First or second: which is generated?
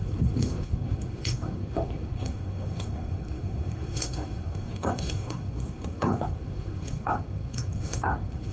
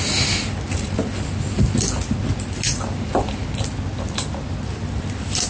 first